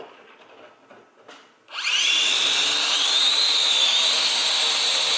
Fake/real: real